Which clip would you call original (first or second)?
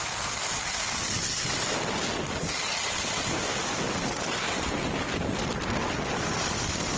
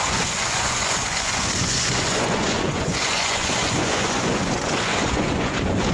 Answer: first